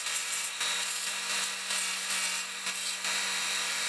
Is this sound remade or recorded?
recorded